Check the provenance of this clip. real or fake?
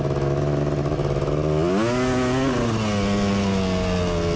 real